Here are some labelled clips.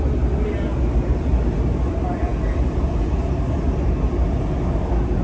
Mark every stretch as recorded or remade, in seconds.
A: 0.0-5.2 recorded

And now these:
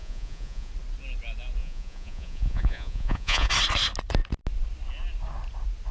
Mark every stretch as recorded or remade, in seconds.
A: 0.0-0.7 remade; 0.7-1.6 recorded; 1.6-3.5 remade; 3.5-5.9 recorded

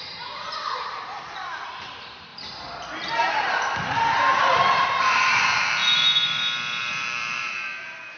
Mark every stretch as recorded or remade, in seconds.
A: 0.0-2.3 remade; 2.3-2.9 recorded; 2.9-5.8 remade; 5.8-6.8 recorded; 6.8-8.2 remade

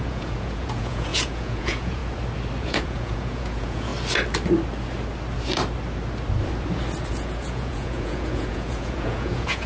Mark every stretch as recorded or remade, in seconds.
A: 0.0-2.0 remade; 2.0-2.6 recorded; 2.6-3.9 remade; 3.9-7.1 recorded; 7.1-9.7 remade

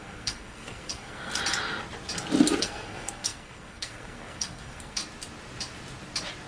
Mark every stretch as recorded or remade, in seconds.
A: 0.0-1.3 remade; 1.3-2.6 recorded; 2.6-5.0 remade; 5.0-6.5 recorded

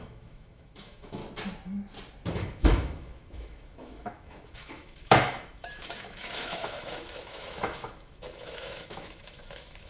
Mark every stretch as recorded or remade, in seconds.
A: 0.0-1.2 remade; 1.2-2.3 recorded; 2.3-9.9 remade

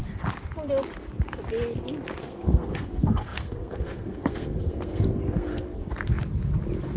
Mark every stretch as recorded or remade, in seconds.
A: 0.0-2.2 recorded; 2.2-5.8 remade; 5.8-7.0 recorded

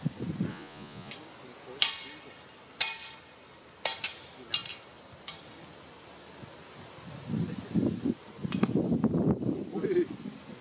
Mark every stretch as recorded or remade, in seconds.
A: 0.0-0.5 recorded; 0.5-1.1 remade; 1.1-10.6 recorded